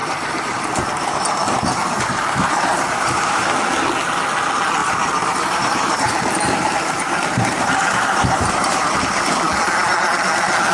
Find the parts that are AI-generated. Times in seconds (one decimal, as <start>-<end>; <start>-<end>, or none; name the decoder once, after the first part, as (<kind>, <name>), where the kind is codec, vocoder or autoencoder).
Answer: 0.0-3.5 (vocoder, BigVGAN v2); 4.8-9.3